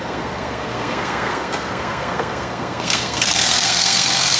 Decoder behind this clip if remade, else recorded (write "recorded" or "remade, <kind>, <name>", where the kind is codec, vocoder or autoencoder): remade, codec, SNAC